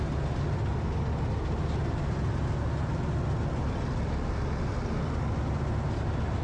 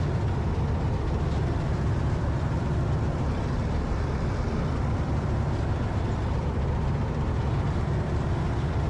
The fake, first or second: second